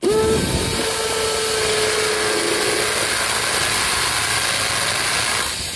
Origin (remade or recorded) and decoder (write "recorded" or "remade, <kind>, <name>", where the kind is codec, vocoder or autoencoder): recorded